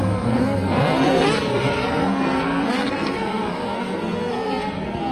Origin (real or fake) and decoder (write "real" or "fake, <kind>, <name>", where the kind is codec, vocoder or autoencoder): fake, codec, SNAC